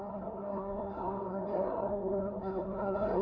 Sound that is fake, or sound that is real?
fake